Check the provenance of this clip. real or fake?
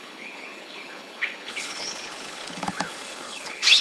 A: fake